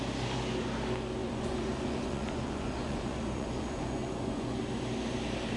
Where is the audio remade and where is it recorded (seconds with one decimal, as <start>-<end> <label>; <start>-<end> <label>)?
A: 0.0-1.2 recorded; 1.2-4.6 remade; 4.6-5.6 recorded